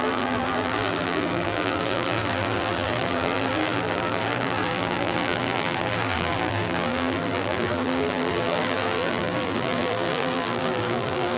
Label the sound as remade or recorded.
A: remade